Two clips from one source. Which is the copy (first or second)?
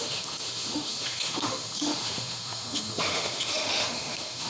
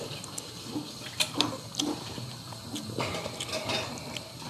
first